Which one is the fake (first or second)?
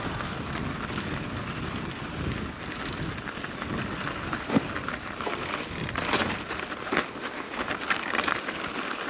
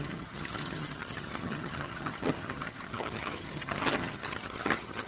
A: second